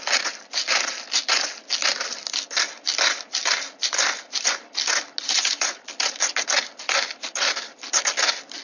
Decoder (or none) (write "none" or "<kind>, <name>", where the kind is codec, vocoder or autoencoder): none